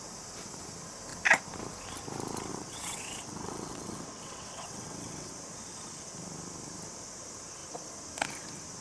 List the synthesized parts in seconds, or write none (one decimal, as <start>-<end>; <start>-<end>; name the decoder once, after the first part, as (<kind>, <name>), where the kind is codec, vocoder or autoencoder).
2.5-5.3 (vocoder, WaveNeXt)